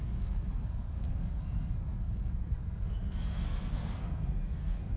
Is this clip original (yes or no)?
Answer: no